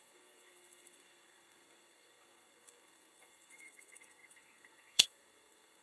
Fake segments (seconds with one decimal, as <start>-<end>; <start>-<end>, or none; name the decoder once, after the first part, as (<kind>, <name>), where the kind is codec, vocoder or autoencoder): 0.0-5.8 (codec, SNAC)